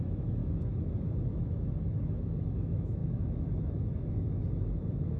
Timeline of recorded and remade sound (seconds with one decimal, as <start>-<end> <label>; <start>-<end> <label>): 0.0-5.2 remade